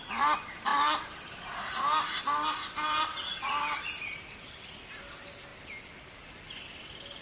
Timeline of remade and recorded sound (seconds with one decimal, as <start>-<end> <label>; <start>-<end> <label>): 0.0-7.2 recorded